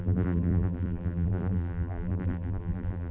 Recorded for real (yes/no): no